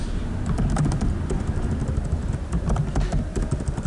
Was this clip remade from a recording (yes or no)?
yes